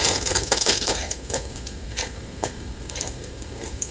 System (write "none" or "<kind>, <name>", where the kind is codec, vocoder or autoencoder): codec, SNAC